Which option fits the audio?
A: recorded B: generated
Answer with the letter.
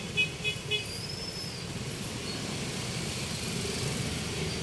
A